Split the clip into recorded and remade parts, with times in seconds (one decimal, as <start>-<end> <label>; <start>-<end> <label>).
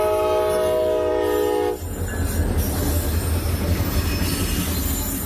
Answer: 0.0-5.3 recorded